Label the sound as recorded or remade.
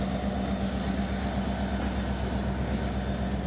recorded